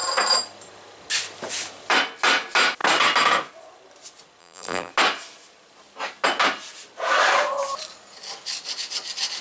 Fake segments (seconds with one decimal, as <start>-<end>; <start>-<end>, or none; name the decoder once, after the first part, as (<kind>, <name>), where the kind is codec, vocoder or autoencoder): 4.4-4.9 (vocoder, BigVGAN v2)